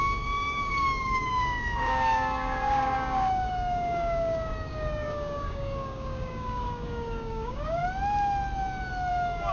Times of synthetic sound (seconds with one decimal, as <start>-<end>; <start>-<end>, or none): 0.0-7.8; 9.1-9.5